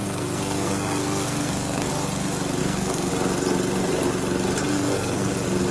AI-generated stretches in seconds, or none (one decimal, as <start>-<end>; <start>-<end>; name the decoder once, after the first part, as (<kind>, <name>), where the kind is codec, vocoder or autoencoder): 0.0-1.9 (codec, SNAC); 2.6-3.1; 4.7-5.3